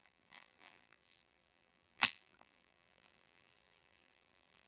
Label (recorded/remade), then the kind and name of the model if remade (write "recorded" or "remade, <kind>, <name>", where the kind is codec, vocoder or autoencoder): remade, vocoder, BigVGAN v2